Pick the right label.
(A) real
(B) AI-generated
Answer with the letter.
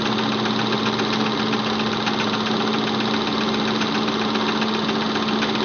A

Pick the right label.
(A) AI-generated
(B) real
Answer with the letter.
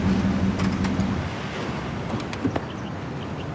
B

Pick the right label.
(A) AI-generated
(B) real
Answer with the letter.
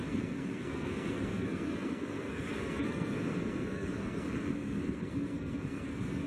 A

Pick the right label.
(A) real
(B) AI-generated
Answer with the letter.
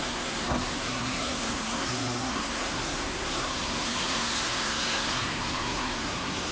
B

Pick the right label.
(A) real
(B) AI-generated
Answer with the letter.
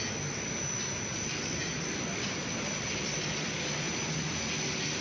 A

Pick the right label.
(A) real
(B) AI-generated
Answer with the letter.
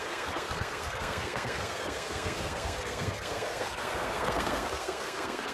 B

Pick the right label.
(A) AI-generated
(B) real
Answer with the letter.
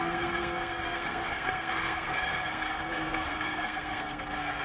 A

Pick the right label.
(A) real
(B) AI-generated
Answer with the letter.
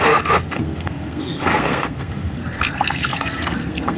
B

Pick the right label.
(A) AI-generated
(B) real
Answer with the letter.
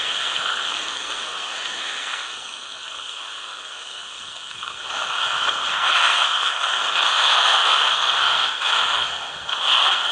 A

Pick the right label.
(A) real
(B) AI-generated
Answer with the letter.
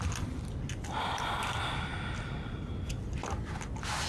A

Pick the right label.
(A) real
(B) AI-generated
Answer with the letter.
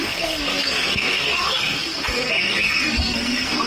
B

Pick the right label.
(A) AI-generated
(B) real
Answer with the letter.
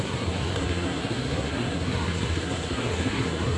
A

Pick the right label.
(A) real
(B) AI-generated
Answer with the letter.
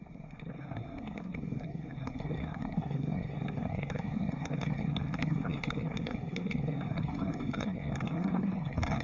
B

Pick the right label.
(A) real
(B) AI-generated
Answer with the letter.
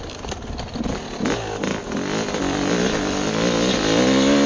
A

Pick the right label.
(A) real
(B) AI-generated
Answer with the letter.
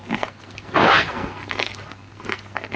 B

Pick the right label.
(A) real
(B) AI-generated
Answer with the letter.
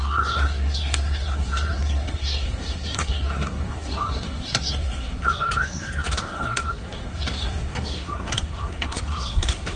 B